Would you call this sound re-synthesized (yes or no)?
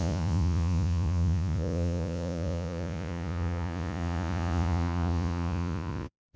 yes